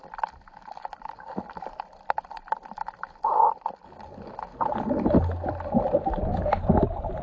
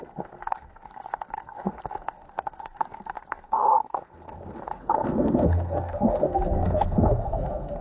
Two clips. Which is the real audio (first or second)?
first